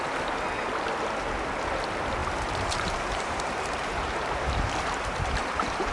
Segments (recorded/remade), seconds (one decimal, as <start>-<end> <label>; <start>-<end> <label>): 0.0-2.2 recorded; 2.2-5.9 remade